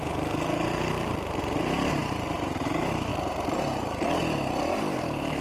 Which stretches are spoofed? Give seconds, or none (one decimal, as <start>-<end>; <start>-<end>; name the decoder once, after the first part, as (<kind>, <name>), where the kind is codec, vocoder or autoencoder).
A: 0.0-3.1 (vocoder, BigVGAN v2); 4.6-5.4